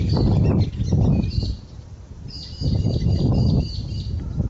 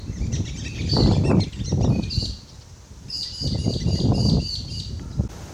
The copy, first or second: first